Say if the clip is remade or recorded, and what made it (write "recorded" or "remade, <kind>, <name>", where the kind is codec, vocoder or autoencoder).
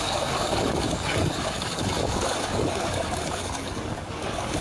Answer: remade, codec, DAC